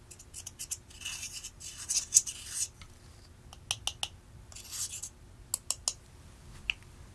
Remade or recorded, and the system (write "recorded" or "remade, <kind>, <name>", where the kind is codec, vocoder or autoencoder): recorded